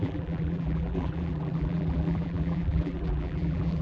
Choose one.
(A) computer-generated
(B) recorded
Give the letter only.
A